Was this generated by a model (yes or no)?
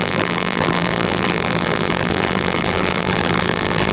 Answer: yes